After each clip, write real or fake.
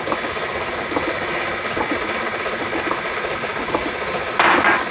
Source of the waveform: real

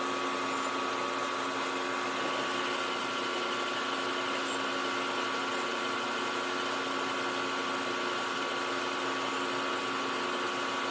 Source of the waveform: real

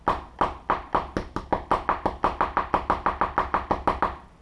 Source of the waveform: real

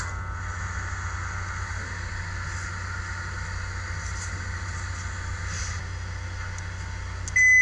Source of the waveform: real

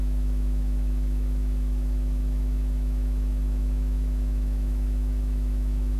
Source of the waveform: fake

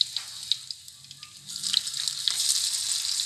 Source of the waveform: real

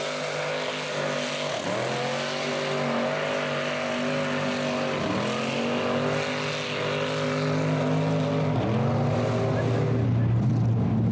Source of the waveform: real